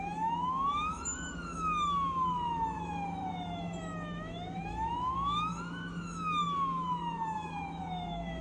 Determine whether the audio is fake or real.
fake